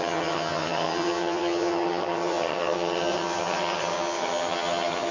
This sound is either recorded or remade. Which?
remade